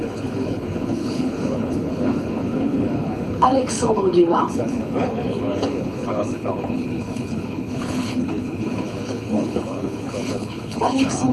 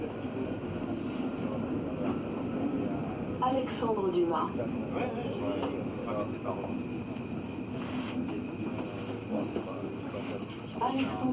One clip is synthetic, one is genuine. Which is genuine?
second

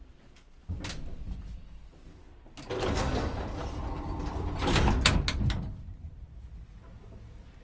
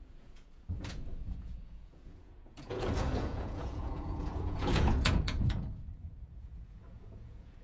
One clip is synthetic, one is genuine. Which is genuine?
first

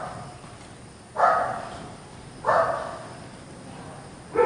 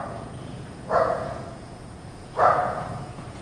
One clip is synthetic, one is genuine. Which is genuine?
first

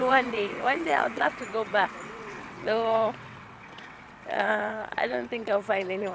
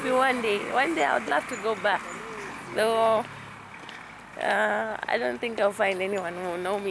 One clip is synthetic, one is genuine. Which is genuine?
second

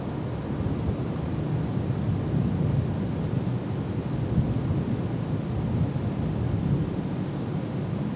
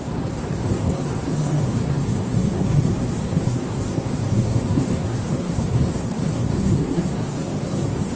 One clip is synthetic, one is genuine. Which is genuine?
first